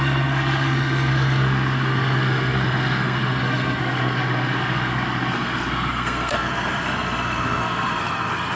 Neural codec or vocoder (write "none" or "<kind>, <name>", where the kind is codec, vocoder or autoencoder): codec, SNAC